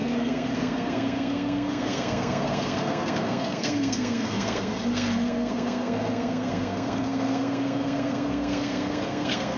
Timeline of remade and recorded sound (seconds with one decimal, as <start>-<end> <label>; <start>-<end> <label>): 0.0-9.6 remade